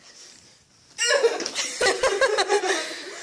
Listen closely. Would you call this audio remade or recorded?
recorded